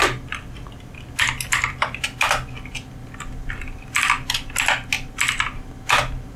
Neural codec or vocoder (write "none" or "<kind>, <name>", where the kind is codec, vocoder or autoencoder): none